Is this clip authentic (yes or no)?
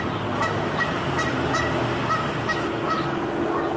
yes